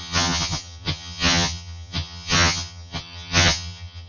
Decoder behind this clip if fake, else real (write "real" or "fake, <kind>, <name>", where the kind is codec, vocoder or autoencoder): fake, vocoder, HiFi-GAN